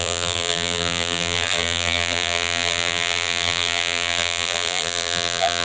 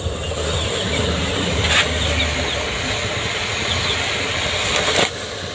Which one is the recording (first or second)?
second